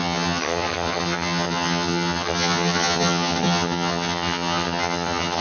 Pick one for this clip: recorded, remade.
remade